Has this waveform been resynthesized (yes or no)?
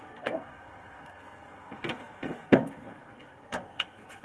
yes